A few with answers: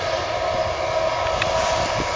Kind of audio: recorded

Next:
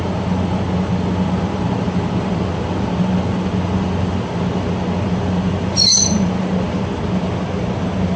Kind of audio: remade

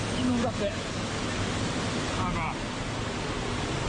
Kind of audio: recorded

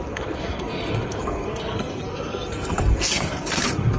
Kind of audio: remade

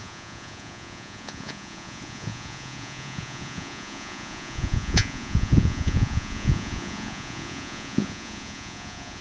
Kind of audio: remade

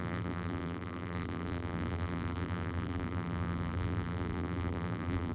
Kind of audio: remade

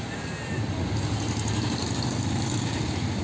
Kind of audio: recorded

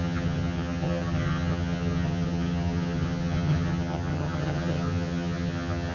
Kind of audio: remade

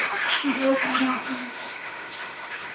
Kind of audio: remade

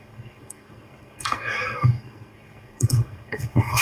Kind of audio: remade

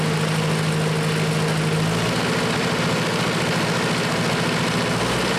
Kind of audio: recorded